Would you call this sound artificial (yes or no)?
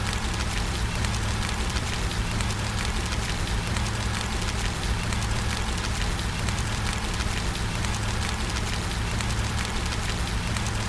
yes